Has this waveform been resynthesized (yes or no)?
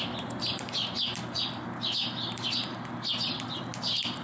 no